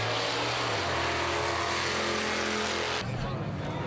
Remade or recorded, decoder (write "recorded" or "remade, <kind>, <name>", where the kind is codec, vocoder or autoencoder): recorded